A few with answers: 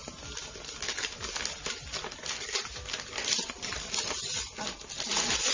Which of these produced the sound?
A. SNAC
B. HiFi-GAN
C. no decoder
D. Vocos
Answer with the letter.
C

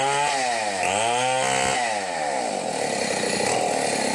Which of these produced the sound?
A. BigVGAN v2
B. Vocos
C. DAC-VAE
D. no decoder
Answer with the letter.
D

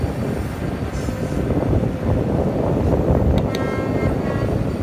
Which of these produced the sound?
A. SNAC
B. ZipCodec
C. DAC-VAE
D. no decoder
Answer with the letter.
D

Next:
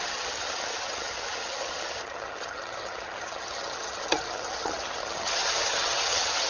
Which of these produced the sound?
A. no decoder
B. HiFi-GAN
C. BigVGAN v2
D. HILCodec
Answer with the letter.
B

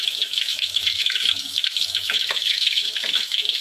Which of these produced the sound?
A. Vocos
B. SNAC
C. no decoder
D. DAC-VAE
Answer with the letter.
D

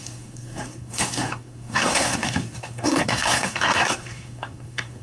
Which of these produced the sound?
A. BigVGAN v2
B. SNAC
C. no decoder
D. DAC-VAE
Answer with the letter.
B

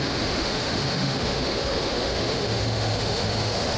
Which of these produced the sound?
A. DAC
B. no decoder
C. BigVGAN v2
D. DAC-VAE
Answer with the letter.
D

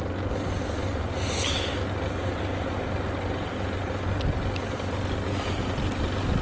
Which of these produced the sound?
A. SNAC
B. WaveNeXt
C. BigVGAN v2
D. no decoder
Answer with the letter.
D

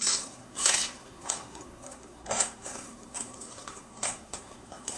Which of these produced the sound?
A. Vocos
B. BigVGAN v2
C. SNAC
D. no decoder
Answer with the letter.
C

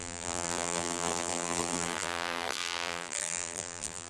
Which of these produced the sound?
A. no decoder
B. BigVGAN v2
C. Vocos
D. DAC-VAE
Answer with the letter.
B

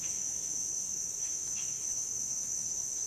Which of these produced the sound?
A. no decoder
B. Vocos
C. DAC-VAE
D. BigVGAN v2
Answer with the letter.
C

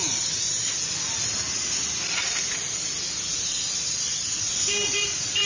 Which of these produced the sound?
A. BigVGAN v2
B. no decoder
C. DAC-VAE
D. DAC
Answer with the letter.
B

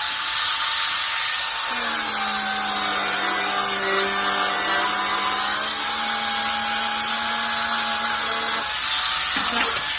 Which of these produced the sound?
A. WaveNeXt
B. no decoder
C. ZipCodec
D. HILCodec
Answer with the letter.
B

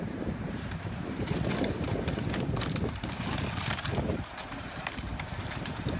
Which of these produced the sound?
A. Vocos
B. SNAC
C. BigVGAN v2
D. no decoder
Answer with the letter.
C